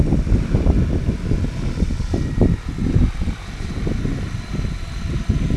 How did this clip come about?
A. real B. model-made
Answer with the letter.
A